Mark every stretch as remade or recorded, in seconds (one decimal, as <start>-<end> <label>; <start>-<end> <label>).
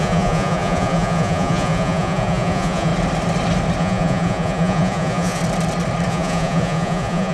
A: 0.0-2.9 remade; 2.9-3.8 recorded; 3.8-5.4 remade; 5.4-6.1 recorded; 6.1-7.3 remade